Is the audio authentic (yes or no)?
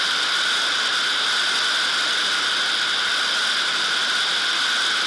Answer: yes